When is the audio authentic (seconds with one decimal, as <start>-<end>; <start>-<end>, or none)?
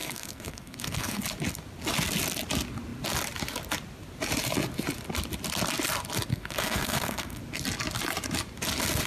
1.2-6.3; 7.4-9.1